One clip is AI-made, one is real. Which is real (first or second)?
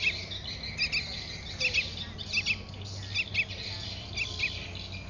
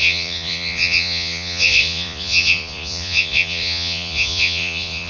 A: first